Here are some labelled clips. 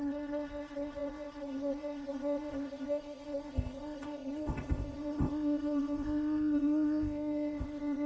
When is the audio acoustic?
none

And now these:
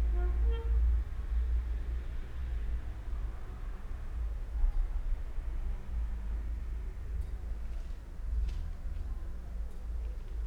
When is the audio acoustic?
0.0-10.5

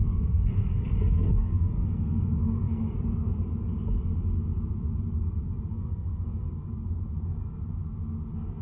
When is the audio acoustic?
3.3-5.7; 6.5-8.6

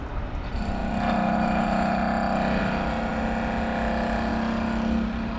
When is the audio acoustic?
0.0-5.4